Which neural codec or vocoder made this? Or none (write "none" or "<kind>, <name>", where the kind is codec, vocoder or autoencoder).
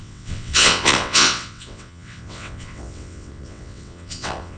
vocoder, WaveNeXt